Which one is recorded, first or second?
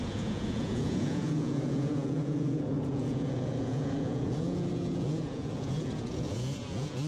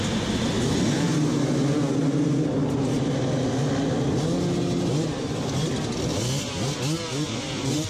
second